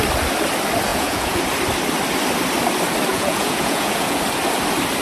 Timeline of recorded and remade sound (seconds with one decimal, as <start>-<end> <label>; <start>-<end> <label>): 0.0-0.9 recorded; 0.9-1.4 remade; 1.4-3.1 recorded; 3.1-4.2 remade; 4.2-5.0 recorded